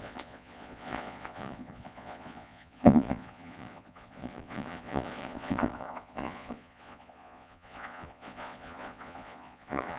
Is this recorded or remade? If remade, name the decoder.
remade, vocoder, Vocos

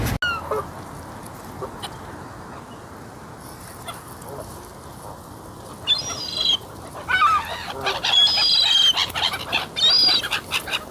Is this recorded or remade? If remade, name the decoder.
recorded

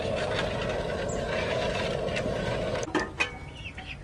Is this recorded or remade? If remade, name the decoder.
remade, vocoder, BigVGAN v2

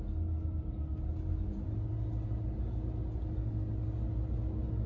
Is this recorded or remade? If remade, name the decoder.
recorded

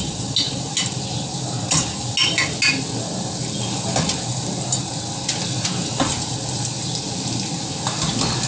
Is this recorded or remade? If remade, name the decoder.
recorded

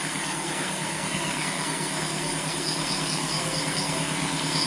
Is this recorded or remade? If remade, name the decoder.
remade, codec, SNAC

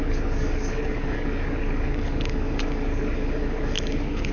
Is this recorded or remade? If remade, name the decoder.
remade, codec, DAC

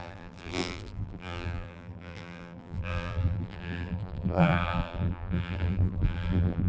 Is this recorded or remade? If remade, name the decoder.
remade, vocoder, BigVGAN v2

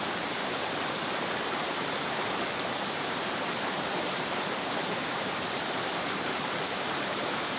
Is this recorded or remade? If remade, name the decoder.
remade, vocoder, BigVGAN v2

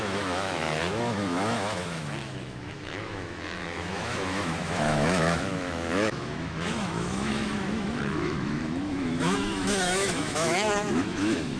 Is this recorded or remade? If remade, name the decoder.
remade, autoencoder, DAC-VAE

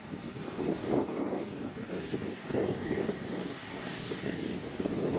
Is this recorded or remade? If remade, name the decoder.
remade, codec, DAC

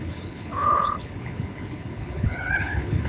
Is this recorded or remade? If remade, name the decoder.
remade, codec, HILCodec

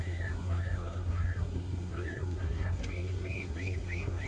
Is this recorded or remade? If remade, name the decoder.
remade, codec, SNAC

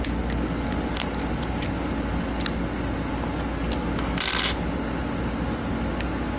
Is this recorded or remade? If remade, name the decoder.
recorded